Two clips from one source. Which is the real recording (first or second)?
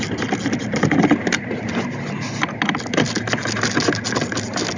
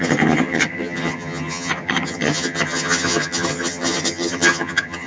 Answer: first